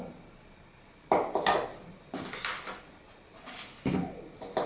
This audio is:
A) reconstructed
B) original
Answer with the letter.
B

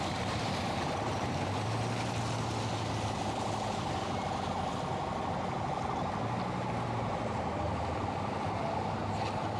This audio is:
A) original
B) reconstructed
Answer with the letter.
A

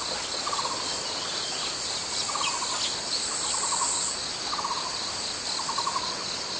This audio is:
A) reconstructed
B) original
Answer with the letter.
B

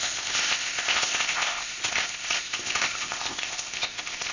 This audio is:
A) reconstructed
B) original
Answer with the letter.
A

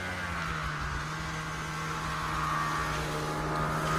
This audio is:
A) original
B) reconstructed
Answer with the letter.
A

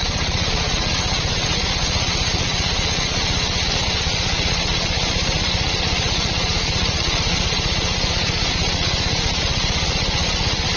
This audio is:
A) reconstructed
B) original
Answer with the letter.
A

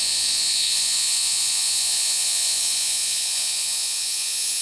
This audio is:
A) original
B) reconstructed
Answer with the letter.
B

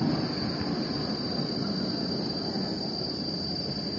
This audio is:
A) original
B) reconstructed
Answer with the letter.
A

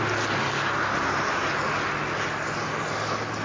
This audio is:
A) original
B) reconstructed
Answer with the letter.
A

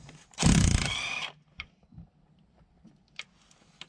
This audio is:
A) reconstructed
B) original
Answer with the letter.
B